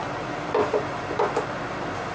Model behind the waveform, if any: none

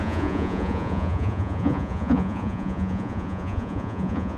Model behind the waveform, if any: vocoder, Vocos